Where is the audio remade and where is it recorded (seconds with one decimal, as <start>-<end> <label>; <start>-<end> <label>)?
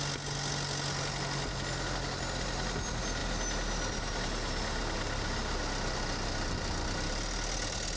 0.0-8.0 recorded